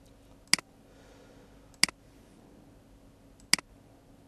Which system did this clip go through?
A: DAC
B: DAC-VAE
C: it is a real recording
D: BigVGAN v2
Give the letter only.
C